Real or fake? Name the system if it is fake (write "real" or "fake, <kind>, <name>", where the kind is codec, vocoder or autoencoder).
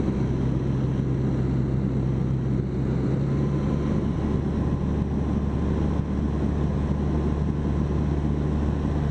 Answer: real